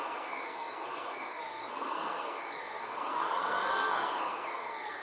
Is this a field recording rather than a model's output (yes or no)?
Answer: no